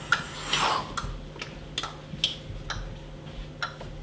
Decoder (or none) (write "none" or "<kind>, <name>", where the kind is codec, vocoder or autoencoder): none